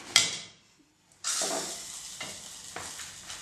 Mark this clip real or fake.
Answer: real